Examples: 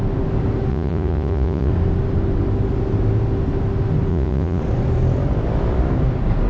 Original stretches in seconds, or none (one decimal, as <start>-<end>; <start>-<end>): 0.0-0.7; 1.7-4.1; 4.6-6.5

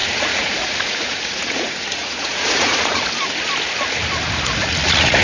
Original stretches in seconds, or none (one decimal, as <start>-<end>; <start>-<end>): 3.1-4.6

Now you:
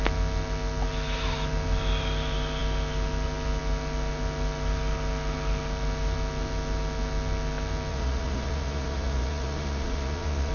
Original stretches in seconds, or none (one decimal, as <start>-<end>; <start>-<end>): 0.0-7.9

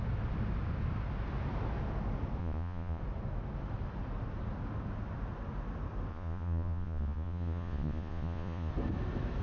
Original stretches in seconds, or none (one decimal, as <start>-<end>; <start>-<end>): 0.0-2.4; 3.0-6.1; 8.7-9.4

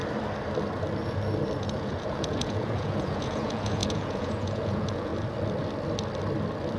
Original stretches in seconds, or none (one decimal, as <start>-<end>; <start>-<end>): 0.0-1.6; 5.1-6.8

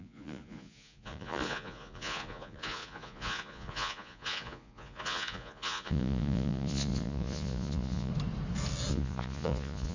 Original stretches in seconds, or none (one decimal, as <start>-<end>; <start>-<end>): 8.1-8.9